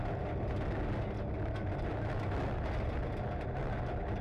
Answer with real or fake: real